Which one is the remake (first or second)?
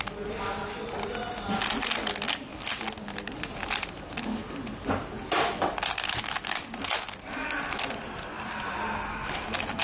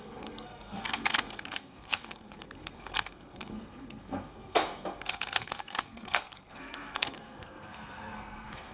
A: second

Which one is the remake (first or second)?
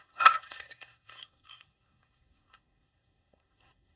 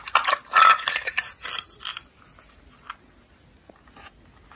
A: first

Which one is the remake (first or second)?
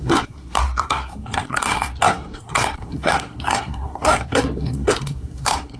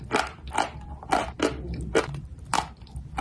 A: first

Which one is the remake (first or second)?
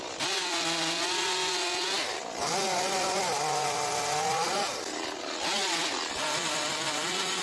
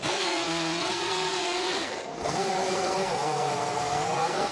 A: second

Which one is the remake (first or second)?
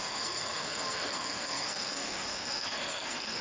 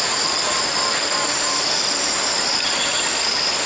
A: first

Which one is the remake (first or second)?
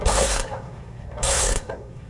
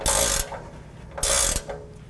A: first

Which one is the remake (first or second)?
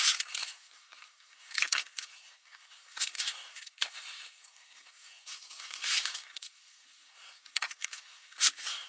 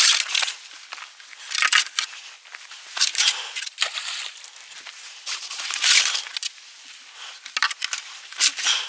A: first